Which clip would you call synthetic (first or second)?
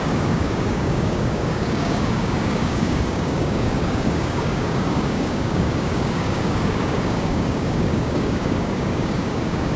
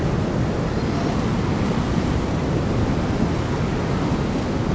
first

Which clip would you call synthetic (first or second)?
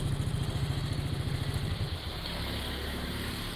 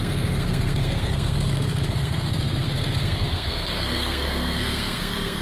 second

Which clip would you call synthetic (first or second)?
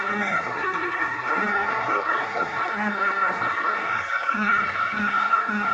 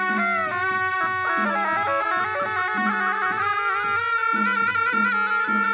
first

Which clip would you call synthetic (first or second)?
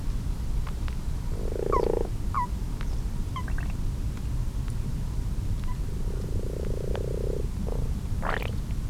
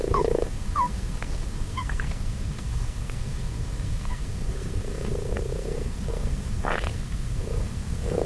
second